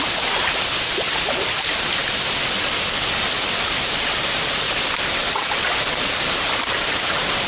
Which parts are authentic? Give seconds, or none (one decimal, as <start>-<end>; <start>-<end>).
2.0-3.2